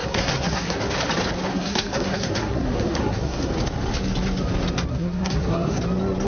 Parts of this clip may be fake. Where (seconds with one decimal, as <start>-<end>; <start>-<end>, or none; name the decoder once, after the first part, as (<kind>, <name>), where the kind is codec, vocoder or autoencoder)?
0.0-0.8 (codec, SNAC); 1.5-3.5; 4.9-5.8